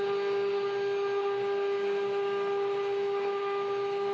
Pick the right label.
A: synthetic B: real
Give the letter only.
B